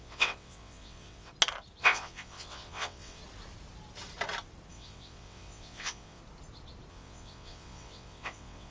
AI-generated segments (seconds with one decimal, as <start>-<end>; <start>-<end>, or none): 0.0-1.3; 1.8-3.2; 4.7-6.2; 6.9-8.7